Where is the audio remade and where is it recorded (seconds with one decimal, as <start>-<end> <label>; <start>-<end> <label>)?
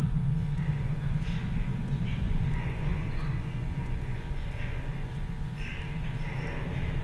0.0-5.7 remade; 5.7-7.0 recorded